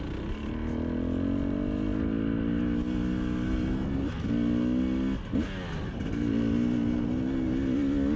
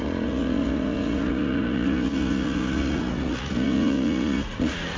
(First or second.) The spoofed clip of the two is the second